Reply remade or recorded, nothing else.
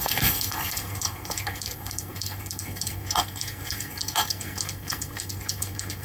remade